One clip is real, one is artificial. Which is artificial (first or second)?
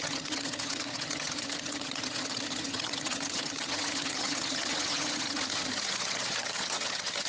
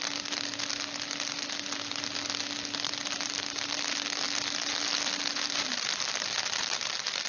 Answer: first